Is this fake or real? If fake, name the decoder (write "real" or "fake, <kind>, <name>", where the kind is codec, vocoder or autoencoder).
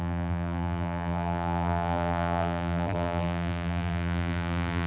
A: fake, vocoder, BigVGAN v2